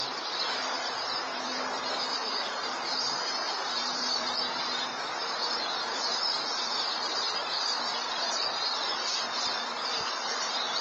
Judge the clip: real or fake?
fake